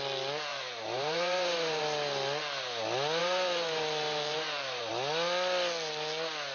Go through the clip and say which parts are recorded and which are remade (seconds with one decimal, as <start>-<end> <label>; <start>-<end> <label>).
0.0-0.5 recorded; 0.5-1.8 remade; 1.8-3.2 recorded; 3.2-4.9 remade; 4.9-6.5 recorded